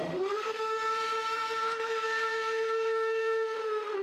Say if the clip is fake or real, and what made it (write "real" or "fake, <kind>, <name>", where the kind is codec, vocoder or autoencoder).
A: fake, autoencoder, DAC-VAE